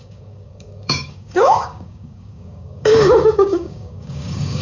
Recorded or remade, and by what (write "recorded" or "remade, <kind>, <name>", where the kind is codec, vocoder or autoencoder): remade, codec, DAC